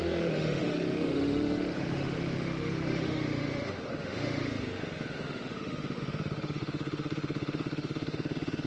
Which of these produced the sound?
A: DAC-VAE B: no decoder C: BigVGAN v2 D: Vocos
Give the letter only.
A